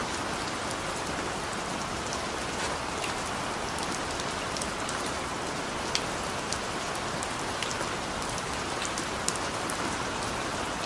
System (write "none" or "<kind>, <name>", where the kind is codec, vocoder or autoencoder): none